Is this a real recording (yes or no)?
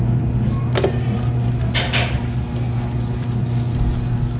yes